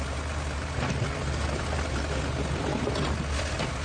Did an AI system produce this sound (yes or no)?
no